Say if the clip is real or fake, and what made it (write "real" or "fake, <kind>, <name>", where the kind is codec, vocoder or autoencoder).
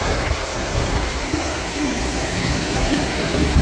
fake, codec, SNAC